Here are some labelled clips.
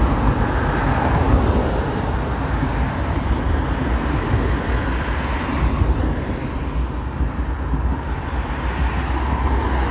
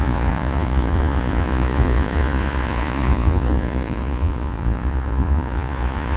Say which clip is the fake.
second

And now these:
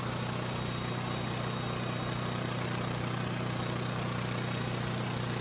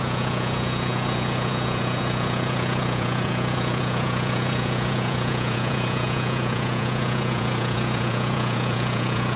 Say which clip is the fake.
second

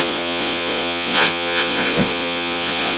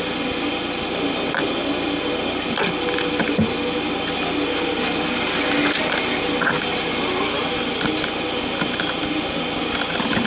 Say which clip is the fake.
first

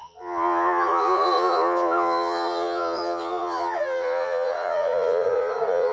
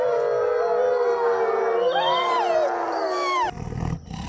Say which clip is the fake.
first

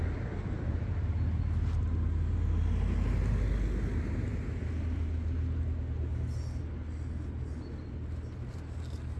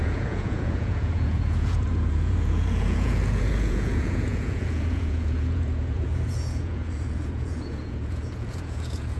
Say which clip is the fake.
second